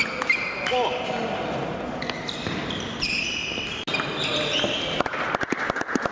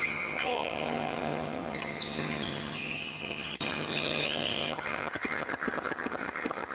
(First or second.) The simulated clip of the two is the second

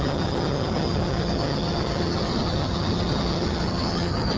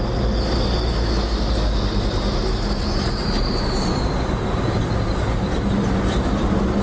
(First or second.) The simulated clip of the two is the first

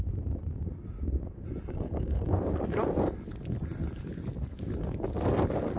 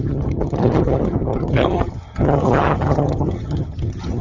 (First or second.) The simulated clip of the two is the second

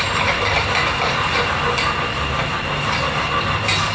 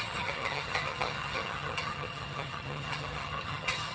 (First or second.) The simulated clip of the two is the second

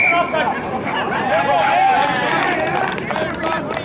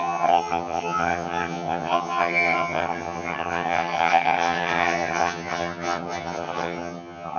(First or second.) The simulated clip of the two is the second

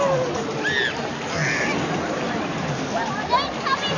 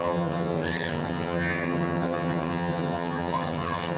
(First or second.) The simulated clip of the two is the second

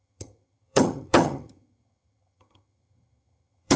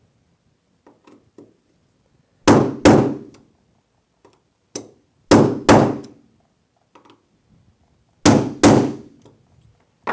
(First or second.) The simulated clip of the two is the first